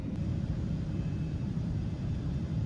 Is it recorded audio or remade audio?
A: remade